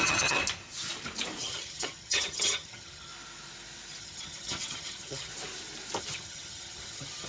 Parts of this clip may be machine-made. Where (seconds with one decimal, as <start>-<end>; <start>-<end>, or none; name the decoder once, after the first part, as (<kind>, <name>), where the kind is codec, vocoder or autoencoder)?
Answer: 0.0-0.4 (vocoder, HiFi-GAN); 1.4-3.1; 4.0-5.3; 6.0-7.3